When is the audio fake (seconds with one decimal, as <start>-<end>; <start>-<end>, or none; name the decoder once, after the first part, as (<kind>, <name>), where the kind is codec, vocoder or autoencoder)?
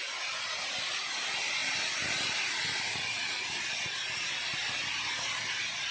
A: none